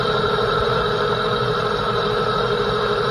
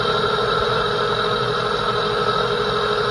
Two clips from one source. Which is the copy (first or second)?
first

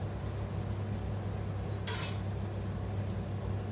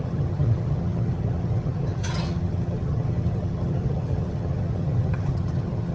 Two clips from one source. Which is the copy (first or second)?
second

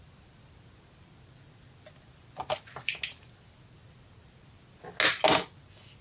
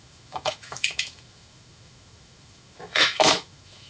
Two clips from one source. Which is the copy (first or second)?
second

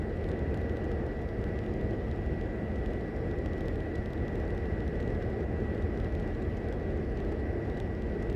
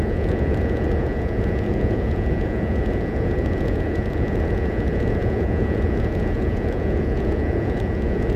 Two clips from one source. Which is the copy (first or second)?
second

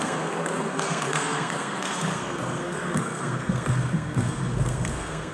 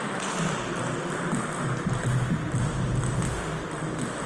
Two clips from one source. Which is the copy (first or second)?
first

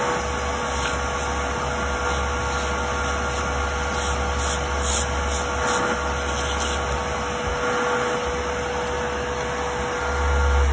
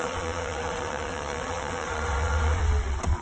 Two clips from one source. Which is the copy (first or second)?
second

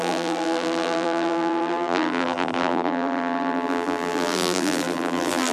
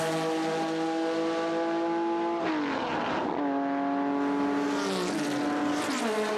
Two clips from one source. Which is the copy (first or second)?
first